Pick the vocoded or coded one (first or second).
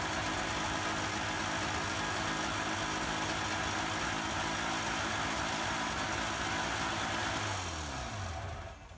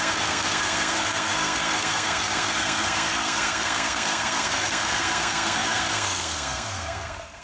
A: second